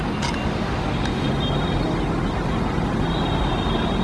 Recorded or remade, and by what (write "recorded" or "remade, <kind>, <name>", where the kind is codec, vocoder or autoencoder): recorded